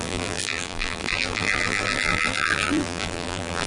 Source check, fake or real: fake